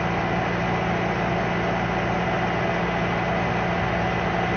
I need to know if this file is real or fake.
real